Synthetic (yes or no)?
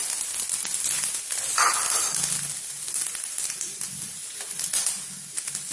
no